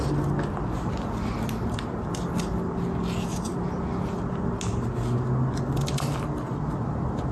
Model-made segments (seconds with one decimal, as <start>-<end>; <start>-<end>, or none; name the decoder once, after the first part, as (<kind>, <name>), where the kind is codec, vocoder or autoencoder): none